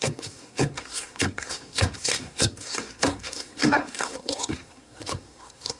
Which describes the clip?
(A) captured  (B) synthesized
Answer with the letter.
B